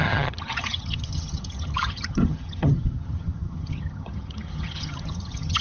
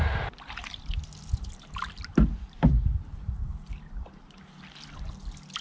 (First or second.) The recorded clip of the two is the second